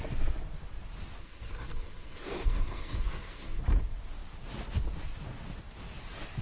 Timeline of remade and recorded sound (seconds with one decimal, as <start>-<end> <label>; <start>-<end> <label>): 0.0-1.2 recorded; 1.2-3.6 remade; 3.6-6.4 recorded